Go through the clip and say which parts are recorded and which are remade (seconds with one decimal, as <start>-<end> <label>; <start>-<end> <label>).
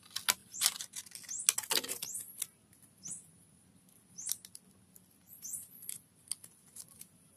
0.0-7.4 recorded